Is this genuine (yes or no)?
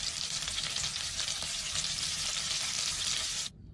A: yes